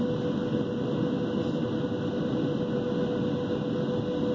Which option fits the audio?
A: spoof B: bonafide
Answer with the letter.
B